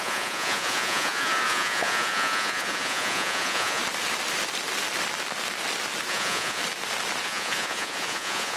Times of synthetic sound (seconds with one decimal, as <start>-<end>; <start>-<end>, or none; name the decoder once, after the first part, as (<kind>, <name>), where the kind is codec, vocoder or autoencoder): 0.0-3.8 (vocoder, Vocos); 6.1-6.6; 7.2-8.6